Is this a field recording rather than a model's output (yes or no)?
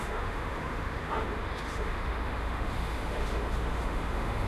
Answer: no